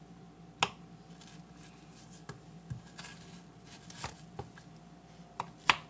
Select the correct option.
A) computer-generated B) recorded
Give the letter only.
B